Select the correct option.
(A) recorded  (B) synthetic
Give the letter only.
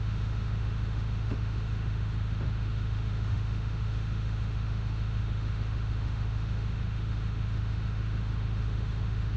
B